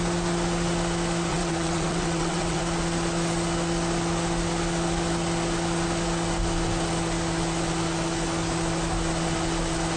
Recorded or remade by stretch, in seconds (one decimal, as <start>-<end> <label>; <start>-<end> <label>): 0.0-1.3 recorded; 1.3-2.6 remade; 2.6-10.0 recorded